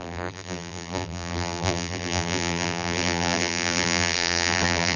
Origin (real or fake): fake